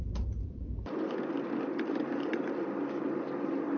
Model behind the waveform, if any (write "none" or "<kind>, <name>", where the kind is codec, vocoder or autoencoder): none